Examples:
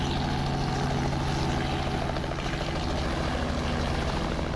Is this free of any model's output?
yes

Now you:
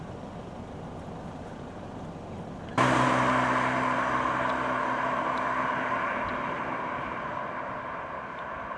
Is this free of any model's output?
yes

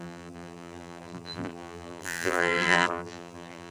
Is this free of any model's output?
no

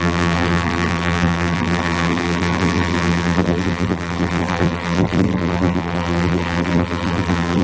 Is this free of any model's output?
no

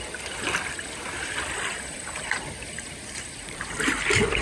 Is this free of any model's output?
no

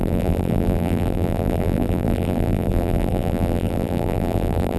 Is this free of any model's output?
no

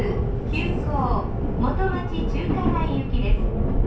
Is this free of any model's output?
yes